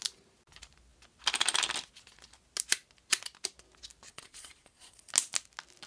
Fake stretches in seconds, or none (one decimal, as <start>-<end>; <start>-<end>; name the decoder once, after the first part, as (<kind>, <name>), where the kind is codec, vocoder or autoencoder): 4.1-5.1 (vocoder, Vocos)